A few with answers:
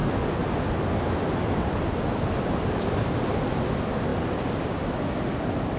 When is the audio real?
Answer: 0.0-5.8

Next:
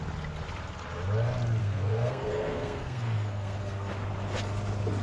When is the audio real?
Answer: 0.0-1.6; 3.9-5.0